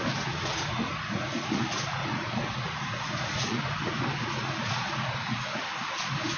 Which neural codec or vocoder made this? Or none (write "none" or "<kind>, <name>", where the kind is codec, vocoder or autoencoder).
vocoder, Vocos